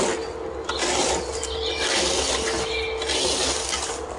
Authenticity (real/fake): real